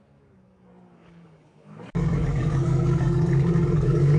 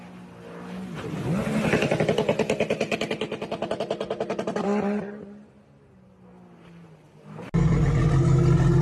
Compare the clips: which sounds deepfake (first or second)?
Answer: first